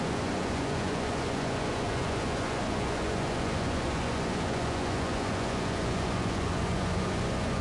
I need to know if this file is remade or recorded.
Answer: remade